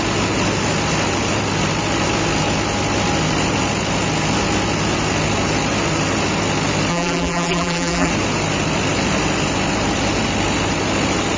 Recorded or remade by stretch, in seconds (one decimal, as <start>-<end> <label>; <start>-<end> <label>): 0.0-6.9 recorded; 6.9-8.1 remade; 8.1-11.4 recorded